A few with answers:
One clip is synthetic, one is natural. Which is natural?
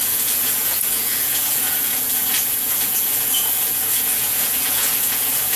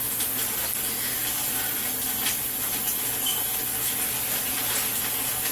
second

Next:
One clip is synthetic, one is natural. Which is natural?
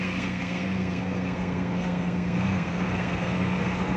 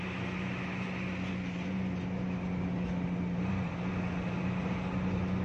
second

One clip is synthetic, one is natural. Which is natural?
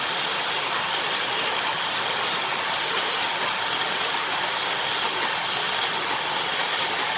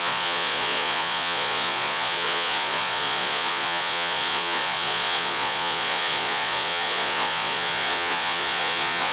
first